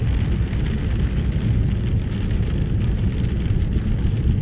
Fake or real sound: real